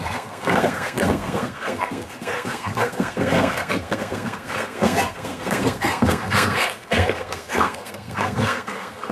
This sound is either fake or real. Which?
fake